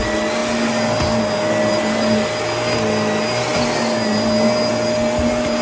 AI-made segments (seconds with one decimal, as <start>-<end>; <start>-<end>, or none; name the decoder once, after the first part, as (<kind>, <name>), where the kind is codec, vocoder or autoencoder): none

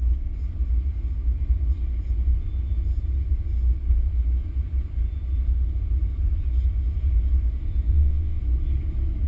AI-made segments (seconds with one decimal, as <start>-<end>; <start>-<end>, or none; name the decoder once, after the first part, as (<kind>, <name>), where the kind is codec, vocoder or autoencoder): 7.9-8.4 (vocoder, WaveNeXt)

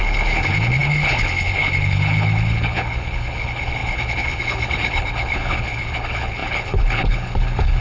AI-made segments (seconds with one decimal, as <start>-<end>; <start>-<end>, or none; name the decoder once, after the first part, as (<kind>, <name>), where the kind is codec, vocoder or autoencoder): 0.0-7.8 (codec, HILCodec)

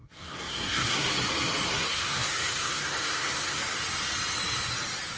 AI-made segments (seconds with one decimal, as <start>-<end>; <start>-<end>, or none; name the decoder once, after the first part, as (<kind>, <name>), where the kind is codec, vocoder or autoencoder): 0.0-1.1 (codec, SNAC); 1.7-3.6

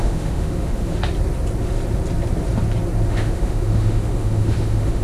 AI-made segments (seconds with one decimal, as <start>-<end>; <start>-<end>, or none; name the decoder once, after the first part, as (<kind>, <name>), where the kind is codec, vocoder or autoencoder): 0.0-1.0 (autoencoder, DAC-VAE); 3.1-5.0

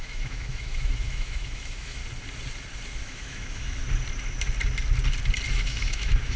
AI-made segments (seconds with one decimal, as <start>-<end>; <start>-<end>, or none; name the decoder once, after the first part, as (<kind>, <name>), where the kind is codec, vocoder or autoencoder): 0.0-2.0 (autoencoder, DAC-VAE); 3.0-3.8; 5.5-6.4

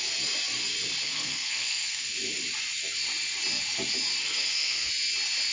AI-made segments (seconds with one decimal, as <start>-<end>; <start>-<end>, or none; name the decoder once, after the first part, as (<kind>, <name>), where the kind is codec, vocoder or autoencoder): 1.0-2.3 (codec, SNAC); 4.2-4.9